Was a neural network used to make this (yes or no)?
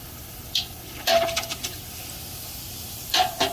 no